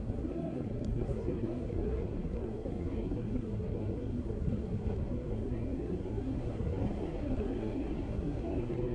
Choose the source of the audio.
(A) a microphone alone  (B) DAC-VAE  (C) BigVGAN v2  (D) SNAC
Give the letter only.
D